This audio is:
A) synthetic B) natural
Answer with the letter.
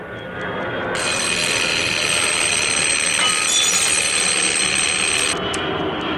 B